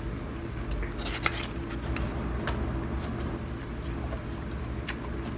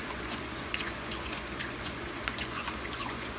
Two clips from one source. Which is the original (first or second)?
first